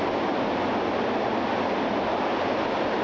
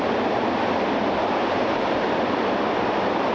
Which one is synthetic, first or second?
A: second